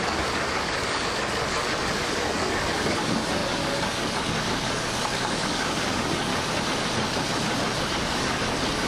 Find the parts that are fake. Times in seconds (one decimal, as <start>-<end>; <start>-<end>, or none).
0.0-6.3; 7.8-8.9